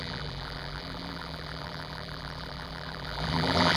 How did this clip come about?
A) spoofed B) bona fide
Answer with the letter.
A